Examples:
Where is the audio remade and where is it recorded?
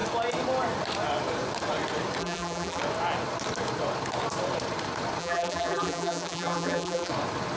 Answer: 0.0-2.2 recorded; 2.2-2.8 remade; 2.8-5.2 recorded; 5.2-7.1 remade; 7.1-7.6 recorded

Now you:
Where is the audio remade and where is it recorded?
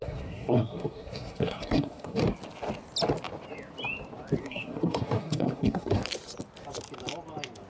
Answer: 0.0-2.2 remade; 2.2-4.4 recorded; 4.4-6.0 remade; 6.0-7.7 recorded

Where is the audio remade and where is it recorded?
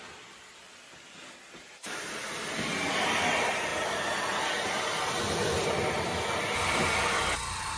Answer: 0.0-3.7 recorded; 3.7-5.9 remade; 5.9-7.8 recorded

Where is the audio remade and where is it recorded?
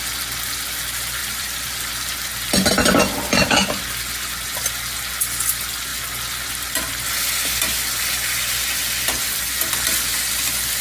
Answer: 0.0-1.2 recorded; 1.2-1.9 remade; 1.9-10.8 recorded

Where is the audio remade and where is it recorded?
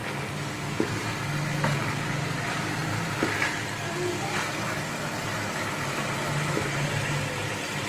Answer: 0.0-1.1 recorded; 1.1-2.8 remade; 2.8-5.9 recorded; 5.9-7.9 remade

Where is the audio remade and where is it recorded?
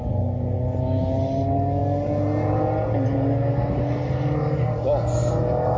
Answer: 0.0-5.8 recorded